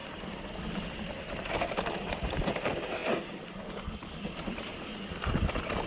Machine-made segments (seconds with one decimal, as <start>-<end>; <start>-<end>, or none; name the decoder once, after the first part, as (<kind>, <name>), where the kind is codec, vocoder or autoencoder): 0.0-3.0 (vocoder, BigVGAN v2); 4.1-4.7; 5.5-5.9